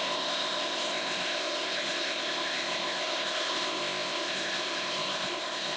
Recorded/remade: remade